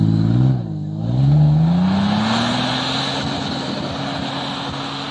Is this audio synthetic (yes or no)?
no